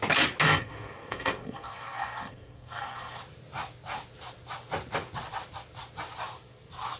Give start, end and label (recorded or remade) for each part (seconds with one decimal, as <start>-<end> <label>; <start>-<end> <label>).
0.0-0.4 recorded; 0.4-3.2 remade; 3.2-7.0 recorded